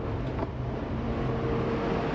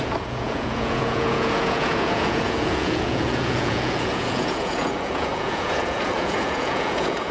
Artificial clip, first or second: second